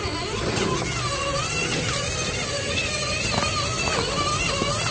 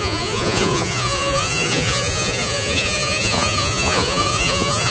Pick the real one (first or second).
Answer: first